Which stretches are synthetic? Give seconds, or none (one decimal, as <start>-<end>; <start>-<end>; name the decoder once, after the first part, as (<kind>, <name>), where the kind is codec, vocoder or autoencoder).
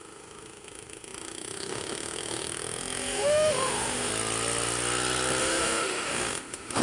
0.0-4.1 (autoencoder, DAC-VAE); 5.4-6.8